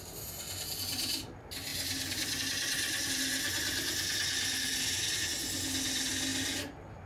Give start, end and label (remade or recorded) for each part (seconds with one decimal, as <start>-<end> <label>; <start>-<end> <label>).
0.0-7.1 recorded